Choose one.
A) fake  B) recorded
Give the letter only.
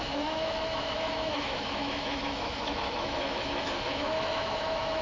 A